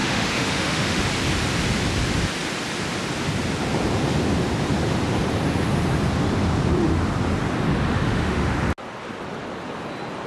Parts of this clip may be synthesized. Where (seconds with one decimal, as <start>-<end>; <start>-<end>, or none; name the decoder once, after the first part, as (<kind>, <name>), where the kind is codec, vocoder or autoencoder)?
0.0-1.0 (autoencoder, DAC-VAE); 7.9-8.5